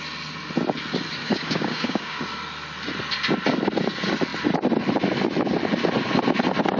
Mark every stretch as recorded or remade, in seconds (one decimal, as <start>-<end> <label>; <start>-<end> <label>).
0.0-1.2 recorded; 1.2-2.2 remade; 2.2-6.8 recorded